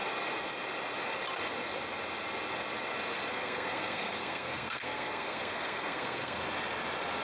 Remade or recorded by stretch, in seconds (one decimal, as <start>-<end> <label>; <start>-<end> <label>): 0.0-3.3 recorded; 3.3-6.4 remade; 6.4-7.2 recorded

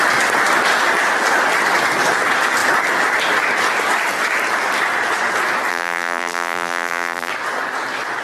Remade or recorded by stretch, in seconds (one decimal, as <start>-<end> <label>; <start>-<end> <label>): 0.0-5.7 recorded; 5.7-7.3 remade; 7.3-8.2 recorded